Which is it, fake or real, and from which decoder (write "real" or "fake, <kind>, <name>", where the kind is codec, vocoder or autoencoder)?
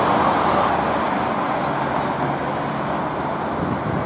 real